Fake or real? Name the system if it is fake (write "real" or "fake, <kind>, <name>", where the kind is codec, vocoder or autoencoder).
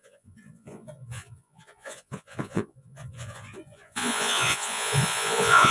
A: fake, vocoder, Vocos